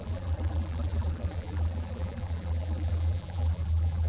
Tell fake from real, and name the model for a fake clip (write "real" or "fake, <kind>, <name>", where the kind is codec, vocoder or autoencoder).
fake, vocoder, BigVGAN v2